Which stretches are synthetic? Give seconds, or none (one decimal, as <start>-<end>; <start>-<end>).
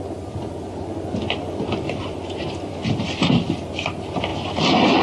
0.7-3.7; 4.3-5.0